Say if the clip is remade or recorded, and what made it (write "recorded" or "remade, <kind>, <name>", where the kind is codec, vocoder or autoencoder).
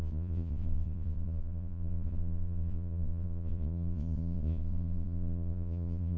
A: remade, vocoder, Vocos